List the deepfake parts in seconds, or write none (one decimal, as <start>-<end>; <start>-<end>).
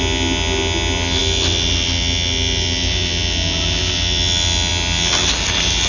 none